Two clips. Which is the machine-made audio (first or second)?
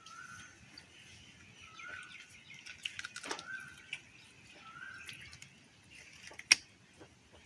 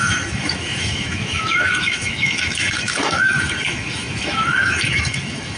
second